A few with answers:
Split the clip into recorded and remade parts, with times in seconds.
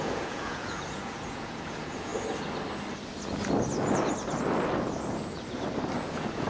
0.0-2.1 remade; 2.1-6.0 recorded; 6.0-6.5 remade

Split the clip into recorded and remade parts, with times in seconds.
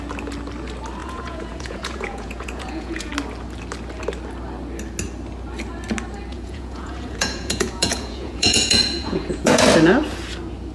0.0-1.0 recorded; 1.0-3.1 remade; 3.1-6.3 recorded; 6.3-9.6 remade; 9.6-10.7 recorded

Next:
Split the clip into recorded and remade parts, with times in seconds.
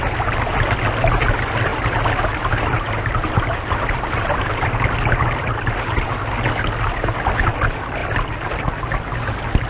0.0-9.7 recorded